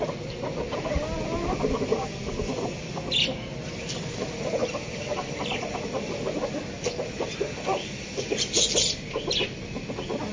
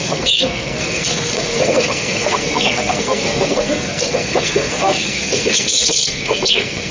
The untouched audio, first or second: first